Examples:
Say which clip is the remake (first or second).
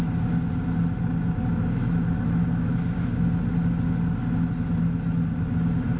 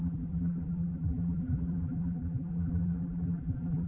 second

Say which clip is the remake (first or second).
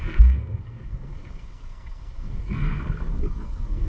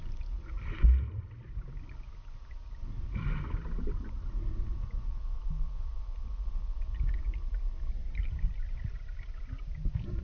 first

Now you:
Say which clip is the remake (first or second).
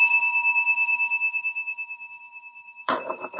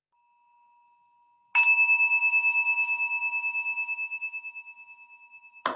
first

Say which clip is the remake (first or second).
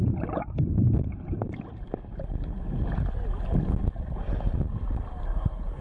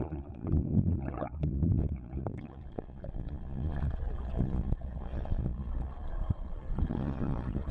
second